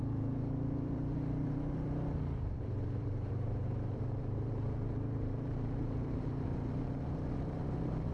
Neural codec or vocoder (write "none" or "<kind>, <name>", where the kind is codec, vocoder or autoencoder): vocoder, BigVGAN v2